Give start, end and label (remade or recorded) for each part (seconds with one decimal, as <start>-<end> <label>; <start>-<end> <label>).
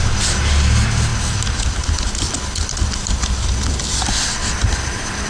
0.0-1.1 recorded; 1.1-2.3 remade; 2.3-4.4 recorded; 4.4-5.3 remade